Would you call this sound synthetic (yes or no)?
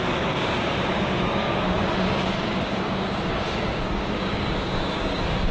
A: yes